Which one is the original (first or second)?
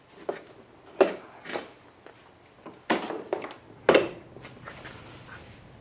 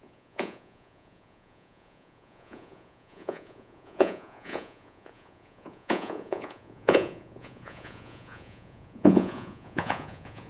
first